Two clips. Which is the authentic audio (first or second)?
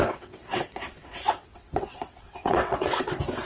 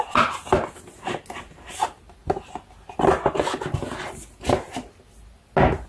second